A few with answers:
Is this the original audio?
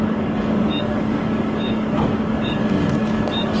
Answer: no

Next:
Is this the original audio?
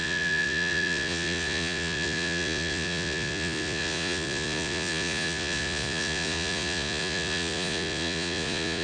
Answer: no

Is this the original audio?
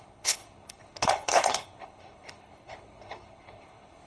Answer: no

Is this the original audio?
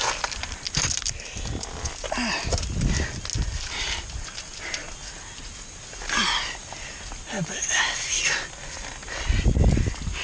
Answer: yes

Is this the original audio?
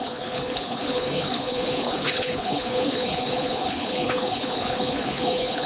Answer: no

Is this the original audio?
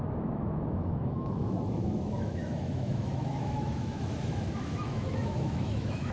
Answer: no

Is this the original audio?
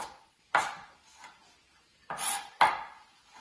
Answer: yes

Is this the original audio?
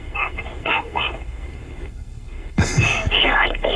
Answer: no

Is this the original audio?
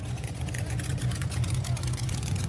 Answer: no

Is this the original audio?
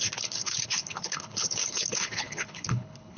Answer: no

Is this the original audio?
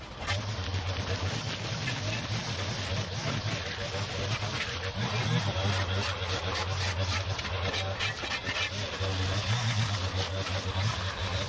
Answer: yes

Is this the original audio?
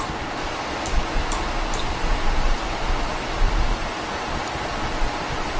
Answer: yes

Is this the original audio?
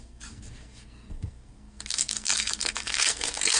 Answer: no